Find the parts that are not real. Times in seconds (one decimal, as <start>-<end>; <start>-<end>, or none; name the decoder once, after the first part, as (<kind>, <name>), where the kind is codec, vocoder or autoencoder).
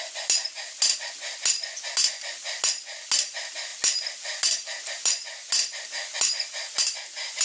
none